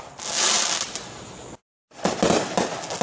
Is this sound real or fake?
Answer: real